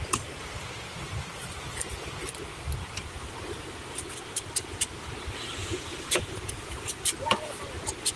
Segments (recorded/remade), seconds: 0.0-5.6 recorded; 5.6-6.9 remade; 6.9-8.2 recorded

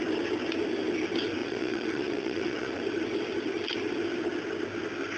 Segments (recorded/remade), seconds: 0.0-1.4 recorded; 1.4-2.8 remade; 2.8-5.2 recorded

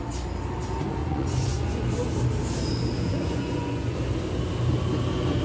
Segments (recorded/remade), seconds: 0.0-1.0 recorded; 1.0-1.8 remade; 1.8-3.1 recorded; 3.1-4.0 remade; 4.0-5.4 recorded

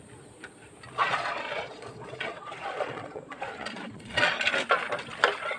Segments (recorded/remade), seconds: 0.0-1.0 recorded; 1.0-4.4 remade; 4.4-5.6 recorded

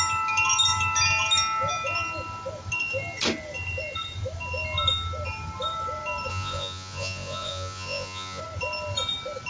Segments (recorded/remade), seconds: 0.0-6.3 recorded; 6.3-8.4 remade; 8.4-9.5 recorded

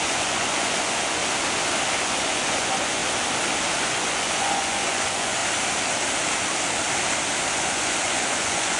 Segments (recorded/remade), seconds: 0.0-1.2 remade; 1.2-2.0 recorded; 2.0-3.0 remade; 3.0-3.8 recorded; 3.8-5.4 remade; 5.4-7.5 recorded; 7.5-8.8 remade

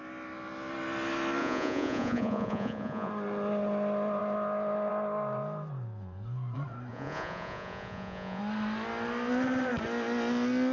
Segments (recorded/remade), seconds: 0.0-1.4 recorded; 1.4-3.1 remade; 3.1-6.9 recorded; 6.9-8.4 remade; 8.4-10.7 recorded